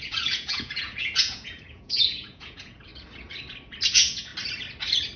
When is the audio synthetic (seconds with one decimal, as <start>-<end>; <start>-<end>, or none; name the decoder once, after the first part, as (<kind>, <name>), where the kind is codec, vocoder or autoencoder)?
0.0-2.9 (vocoder, Vocos); 3.9-4.3